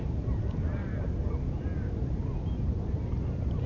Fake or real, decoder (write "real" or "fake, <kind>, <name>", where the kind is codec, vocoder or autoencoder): real